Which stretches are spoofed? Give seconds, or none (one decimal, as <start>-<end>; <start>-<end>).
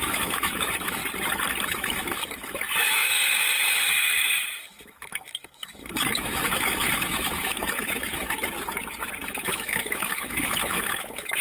0.0-1.0; 1.6-11.4